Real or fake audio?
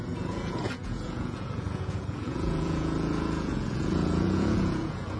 fake